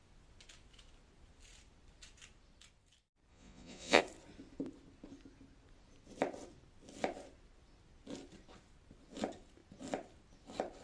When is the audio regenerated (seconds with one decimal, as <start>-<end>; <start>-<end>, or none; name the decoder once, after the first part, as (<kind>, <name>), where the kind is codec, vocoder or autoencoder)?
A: 3.3-4.0 (vocoder, Vocos)